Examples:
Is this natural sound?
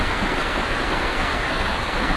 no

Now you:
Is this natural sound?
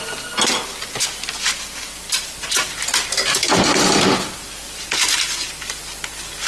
yes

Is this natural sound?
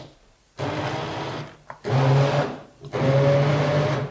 yes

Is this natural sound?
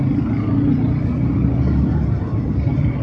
yes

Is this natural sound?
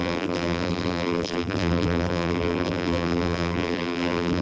no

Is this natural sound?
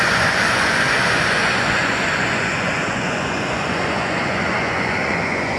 no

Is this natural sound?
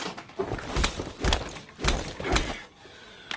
yes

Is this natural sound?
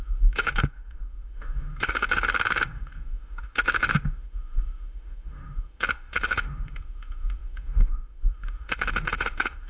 no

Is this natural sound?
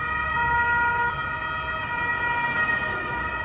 yes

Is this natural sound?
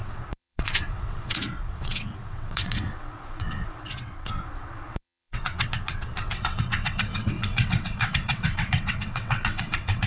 no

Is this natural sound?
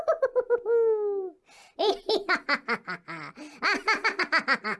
yes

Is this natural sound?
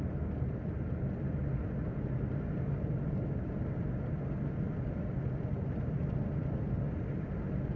yes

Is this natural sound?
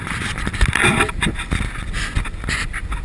yes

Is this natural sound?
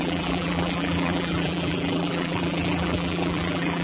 no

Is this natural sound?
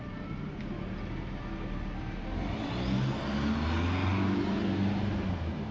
yes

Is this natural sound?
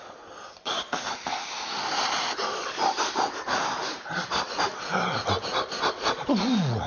yes